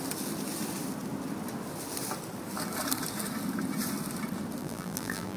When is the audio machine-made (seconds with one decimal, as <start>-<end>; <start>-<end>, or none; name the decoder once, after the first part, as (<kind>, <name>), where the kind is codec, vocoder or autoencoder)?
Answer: 4.6-5.4 (vocoder, BigVGAN v2)

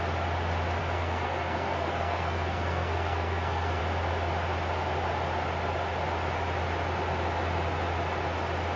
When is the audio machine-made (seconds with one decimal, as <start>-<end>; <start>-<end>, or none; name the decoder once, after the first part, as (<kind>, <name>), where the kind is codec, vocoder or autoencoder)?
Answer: 0.8-3.8 (codec, SNAC)

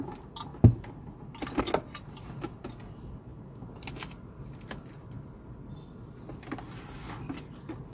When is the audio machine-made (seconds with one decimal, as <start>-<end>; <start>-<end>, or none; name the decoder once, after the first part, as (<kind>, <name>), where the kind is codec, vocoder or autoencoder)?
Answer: none

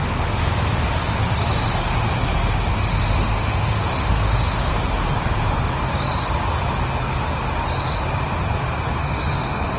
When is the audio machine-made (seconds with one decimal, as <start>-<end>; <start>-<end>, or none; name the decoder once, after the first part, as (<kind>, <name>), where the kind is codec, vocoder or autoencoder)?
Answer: 2.7-4.7 (autoencoder, DAC-VAE); 9.0-9.8

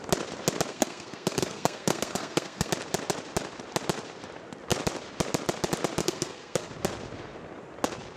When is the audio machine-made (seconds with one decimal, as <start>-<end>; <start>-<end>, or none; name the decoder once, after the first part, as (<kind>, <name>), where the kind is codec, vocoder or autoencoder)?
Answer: 0.7-2.7 (codec, SNAC); 6.0-6.7

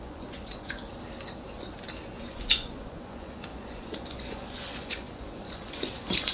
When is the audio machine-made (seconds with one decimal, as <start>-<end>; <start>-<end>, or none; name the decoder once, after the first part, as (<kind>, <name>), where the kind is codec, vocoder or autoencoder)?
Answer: 0.0-0.8 (vocoder, Vocos); 2.2-6.3